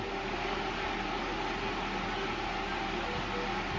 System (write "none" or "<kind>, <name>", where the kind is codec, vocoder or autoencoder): none